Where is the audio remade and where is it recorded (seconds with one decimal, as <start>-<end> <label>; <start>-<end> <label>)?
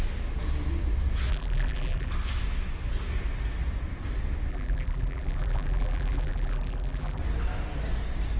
0.0-1.3 recorded; 1.3-2.1 remade; 2.1-4.5 recorded; 4.5-7.2 remade; 7.2-8.4 recorded